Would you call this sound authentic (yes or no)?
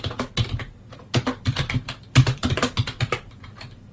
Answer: no